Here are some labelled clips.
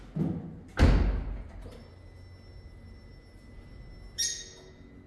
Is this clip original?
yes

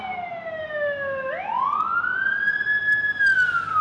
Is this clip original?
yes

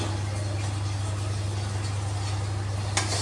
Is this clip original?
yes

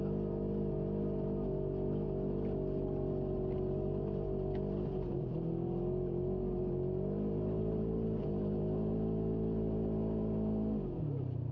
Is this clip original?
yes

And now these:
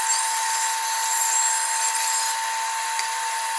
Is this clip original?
yes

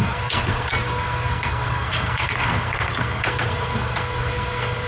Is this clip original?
no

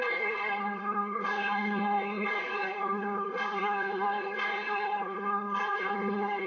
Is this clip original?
no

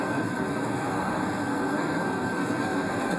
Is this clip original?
no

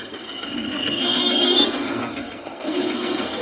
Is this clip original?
no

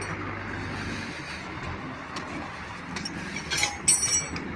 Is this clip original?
yes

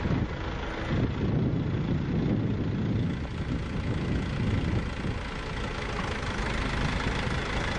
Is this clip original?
yes